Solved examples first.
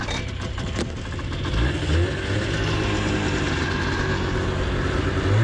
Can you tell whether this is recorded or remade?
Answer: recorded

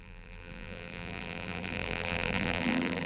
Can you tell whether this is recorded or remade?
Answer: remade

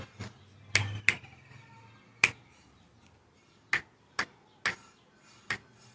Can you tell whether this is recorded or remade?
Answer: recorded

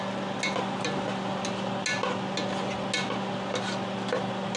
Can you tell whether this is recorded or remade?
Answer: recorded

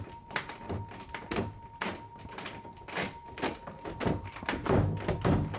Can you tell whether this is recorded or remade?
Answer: recorded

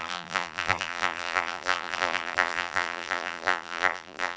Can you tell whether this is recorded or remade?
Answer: remade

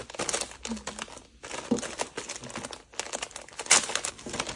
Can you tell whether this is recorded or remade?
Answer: recorded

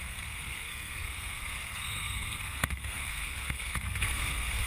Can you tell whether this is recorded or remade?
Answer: remade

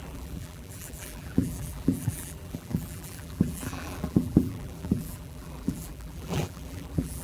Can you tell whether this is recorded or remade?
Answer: remade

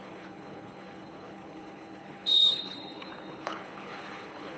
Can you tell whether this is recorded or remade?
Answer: remade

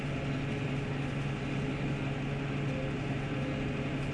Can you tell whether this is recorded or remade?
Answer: recorded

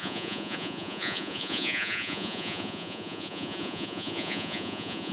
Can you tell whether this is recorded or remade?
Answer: remade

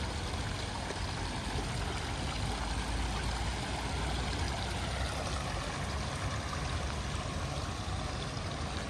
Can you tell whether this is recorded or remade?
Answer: recorded